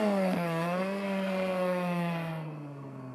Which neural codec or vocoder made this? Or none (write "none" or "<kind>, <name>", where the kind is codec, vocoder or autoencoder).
codec, SNAC